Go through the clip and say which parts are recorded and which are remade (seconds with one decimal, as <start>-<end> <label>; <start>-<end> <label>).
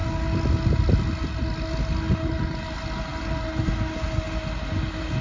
0.0-5.2 recorded